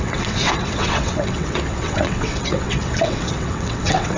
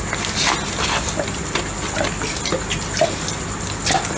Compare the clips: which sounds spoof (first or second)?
first